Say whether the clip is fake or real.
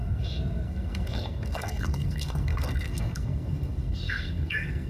fake